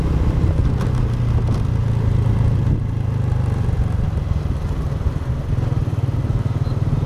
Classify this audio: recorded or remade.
recorded